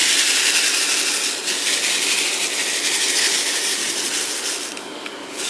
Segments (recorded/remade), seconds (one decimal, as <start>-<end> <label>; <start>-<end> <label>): 0.0-3.1 recorded; 3.1-3.8 remade; 3.8-4.8 recorded; 4.8-5.5 remade